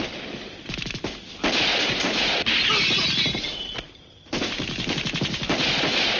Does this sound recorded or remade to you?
recorded